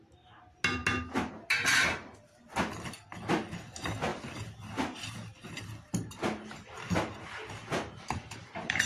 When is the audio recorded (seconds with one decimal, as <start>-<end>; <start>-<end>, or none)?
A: 0.0-7.6